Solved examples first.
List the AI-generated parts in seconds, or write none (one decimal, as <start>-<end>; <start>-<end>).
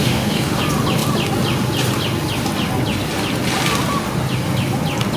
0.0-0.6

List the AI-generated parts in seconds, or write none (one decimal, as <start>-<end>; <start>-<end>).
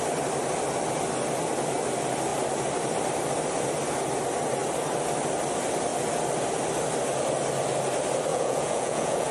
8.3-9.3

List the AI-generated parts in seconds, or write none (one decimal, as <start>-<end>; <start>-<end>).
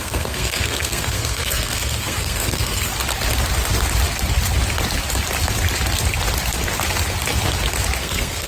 0.0-2.9; 8.0-8.5